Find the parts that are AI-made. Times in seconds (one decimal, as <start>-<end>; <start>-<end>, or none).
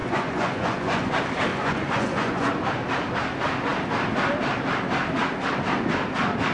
0.0-1.1; 1.5-2.5